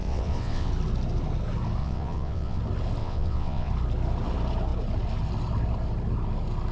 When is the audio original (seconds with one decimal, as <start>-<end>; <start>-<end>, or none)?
0.7-1.8; 2.6-3.0; 3.7-6.7